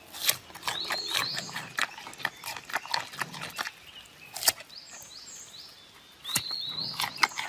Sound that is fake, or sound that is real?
real